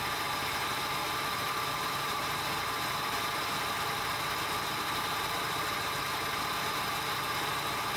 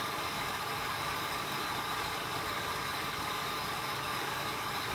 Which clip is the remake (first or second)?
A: second